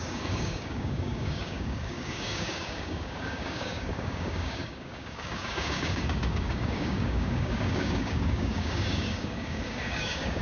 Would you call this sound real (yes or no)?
no